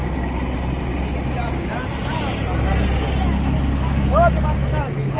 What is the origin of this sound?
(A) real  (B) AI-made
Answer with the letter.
A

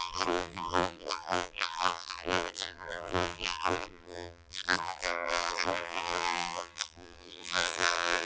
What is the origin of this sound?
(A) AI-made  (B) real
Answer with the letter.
A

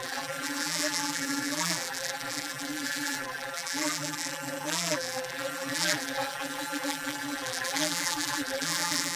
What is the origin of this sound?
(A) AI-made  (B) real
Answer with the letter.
A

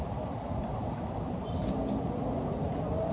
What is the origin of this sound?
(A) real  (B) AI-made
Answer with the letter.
A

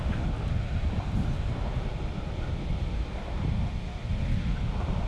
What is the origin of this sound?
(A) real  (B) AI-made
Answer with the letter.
B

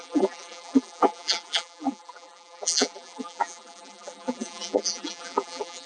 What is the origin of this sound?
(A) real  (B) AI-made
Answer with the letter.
B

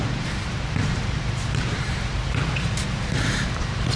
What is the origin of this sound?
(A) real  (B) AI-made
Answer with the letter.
B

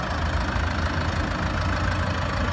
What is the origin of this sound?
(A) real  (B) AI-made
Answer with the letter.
A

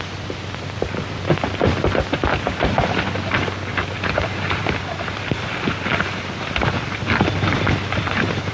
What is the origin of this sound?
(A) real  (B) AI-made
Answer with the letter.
B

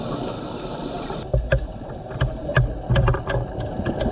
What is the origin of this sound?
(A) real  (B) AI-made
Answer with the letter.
A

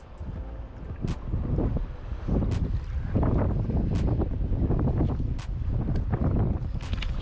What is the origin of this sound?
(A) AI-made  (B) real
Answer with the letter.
B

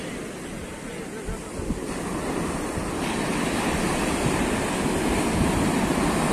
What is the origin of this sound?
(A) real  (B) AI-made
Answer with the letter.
A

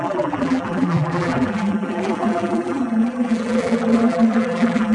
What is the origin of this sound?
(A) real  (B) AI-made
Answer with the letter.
B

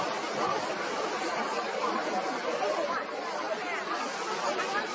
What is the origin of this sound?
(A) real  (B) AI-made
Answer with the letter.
A